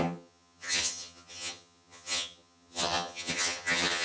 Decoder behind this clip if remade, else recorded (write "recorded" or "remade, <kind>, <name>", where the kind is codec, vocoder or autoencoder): remade, vocoder, HiFi-GAN